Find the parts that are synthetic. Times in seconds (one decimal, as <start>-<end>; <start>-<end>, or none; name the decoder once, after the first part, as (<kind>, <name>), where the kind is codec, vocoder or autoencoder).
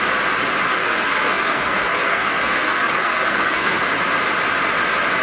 0.7-3.8 (codec, SNAC)